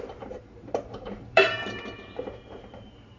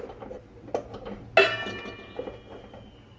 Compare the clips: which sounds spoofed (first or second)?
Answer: first